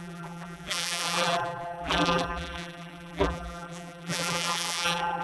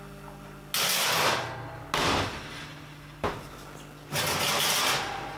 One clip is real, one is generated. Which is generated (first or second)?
first